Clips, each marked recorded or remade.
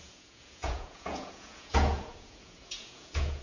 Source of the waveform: remade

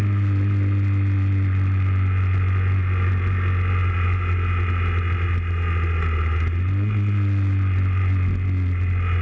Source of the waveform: recorded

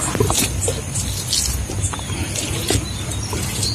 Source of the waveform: recorded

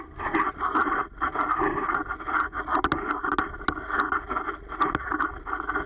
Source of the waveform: recorded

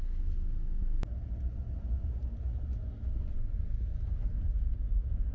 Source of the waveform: recorded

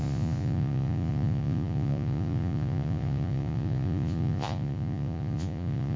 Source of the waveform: remade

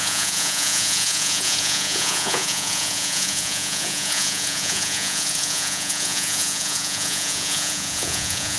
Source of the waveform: remade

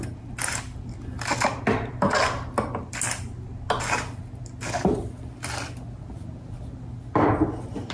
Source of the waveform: recorded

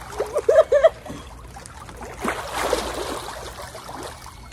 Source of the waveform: recorded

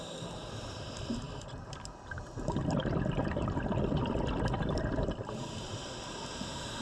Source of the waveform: recorded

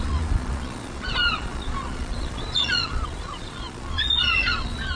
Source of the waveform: remade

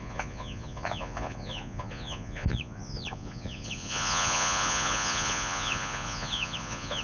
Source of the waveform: remade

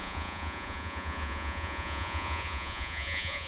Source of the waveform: remade